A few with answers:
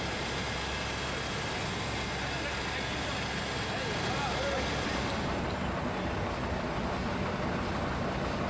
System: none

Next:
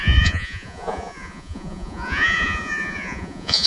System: vocoder, Vocos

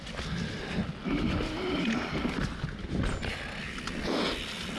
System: none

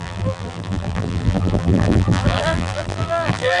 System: vocoder, BigVGAN v2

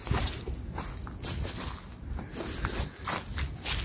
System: none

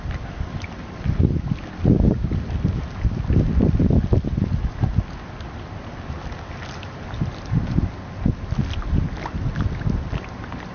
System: none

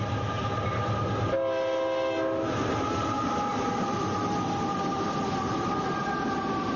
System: none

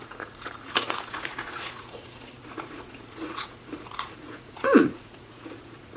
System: vocoder, Vocos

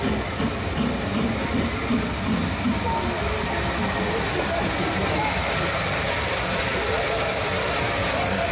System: none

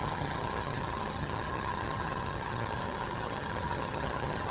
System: vocoder, HiFi-GAN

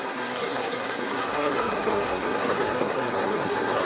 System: codec, SNAC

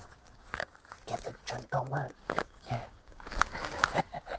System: codec, DAC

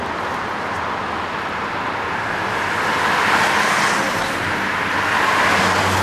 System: none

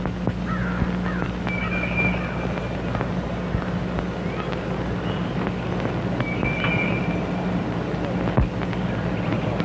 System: none